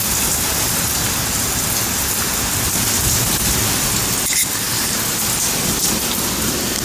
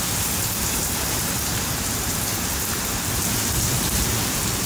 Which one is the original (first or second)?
first